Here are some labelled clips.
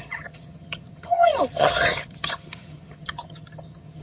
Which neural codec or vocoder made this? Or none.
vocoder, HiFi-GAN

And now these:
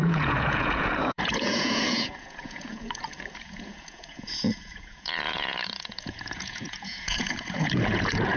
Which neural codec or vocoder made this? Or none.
vocoder, Vocos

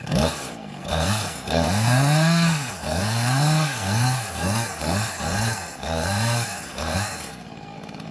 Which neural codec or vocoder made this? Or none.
codec, SNAC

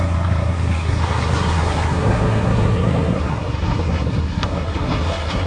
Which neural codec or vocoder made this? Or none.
codec, SNAC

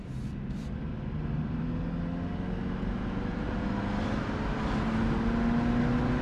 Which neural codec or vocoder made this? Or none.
none